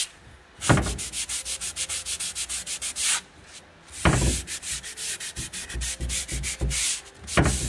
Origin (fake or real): real